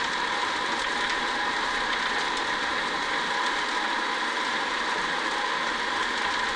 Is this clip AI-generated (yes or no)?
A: no